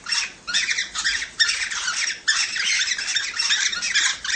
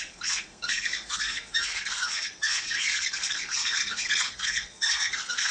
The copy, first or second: second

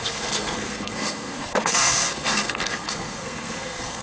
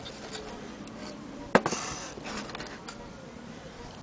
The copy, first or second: first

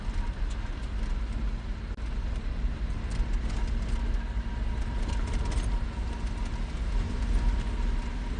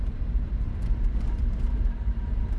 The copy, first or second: second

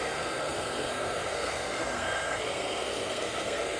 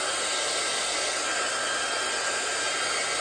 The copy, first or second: first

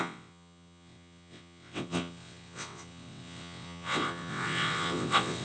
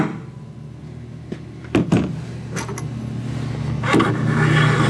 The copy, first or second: first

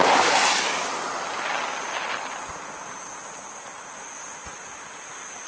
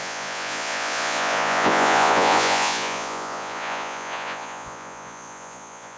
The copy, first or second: second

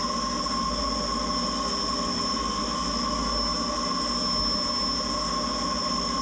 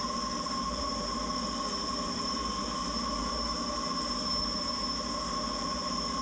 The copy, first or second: second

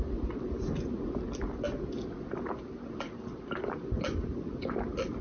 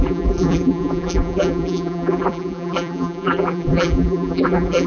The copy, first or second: second